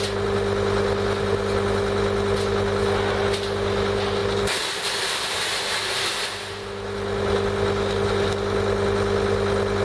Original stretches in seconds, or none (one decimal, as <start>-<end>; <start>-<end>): 0.0-9.8